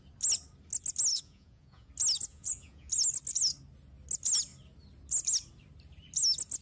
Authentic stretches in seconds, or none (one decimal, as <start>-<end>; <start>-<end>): 0.0-1.1; 1.9-2.3; 2.9-6.6